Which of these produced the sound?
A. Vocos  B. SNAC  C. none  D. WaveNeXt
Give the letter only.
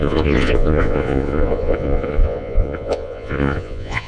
A